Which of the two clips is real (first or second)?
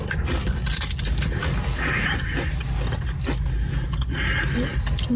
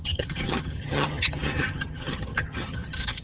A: first